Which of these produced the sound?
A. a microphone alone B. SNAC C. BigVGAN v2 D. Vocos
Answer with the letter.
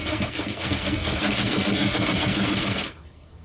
B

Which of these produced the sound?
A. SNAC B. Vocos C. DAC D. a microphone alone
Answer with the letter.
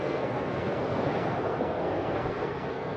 A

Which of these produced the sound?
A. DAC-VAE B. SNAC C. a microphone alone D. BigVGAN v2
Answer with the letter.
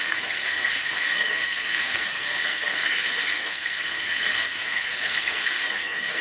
B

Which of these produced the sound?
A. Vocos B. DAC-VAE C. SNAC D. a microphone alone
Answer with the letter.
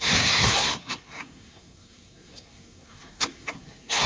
C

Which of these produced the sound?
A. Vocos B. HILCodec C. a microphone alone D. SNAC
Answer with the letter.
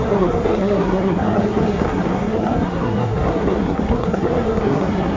D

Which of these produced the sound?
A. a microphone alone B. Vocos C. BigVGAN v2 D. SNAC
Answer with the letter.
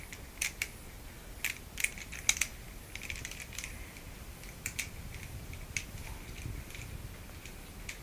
A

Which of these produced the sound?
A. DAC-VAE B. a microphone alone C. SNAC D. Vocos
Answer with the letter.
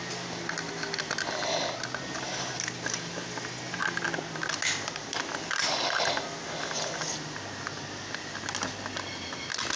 B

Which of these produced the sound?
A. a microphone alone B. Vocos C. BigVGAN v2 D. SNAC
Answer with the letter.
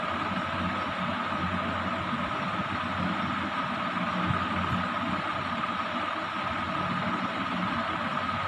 A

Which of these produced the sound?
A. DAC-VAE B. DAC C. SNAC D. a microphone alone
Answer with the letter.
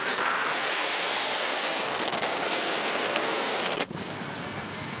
C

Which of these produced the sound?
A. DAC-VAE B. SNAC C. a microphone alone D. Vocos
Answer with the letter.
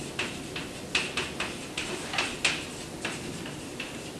C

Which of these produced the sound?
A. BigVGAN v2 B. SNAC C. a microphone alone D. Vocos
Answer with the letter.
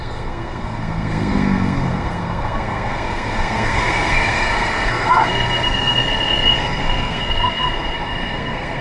B